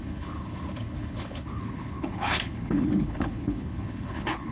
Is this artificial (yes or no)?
yes